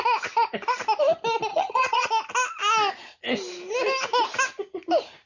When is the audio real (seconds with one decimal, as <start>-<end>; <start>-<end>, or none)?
0.0-1.5; 2.1-5.3